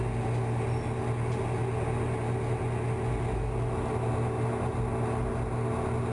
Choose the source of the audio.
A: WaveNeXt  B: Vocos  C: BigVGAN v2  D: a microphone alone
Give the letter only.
D